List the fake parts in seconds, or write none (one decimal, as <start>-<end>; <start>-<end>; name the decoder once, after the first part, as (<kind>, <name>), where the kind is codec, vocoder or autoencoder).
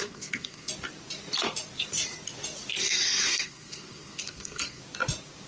0.0-0.7 (codec, SNAC); 2.8-4.8